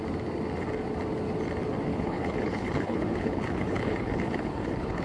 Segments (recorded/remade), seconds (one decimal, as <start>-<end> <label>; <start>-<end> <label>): 0.0-1.9 recorded; 1.9-5.0 remade